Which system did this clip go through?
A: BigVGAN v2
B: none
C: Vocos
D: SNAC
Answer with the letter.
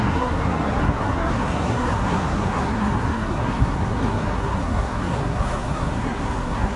D